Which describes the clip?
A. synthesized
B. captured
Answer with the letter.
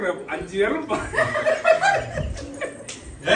B